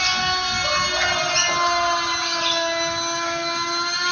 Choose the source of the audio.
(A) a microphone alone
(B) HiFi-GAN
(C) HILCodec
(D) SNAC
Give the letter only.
A